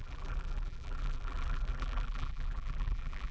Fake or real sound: fake